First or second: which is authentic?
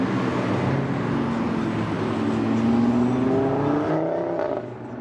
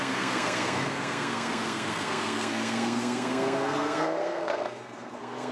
first